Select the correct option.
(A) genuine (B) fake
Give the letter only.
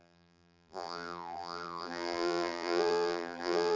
B